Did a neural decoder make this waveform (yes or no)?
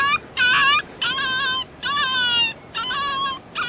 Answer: no